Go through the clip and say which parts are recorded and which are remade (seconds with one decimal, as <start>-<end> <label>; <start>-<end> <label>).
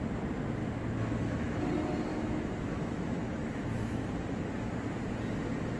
0.0-0.6 recorded; 0.6-1.6 remade; 1.6-2.1 recorded; 2.1-4.1 remade; 4.1-5.8 recorded